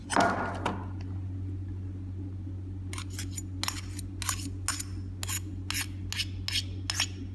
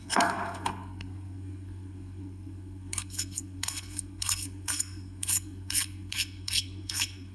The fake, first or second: second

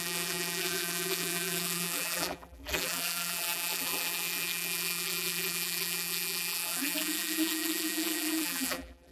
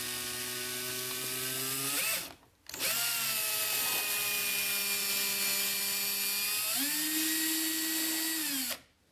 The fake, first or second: first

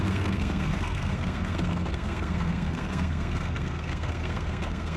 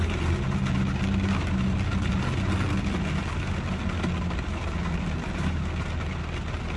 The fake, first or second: first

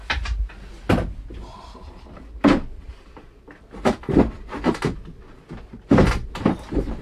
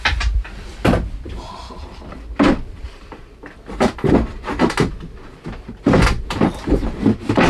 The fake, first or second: second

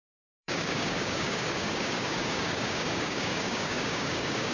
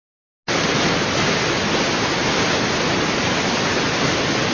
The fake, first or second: first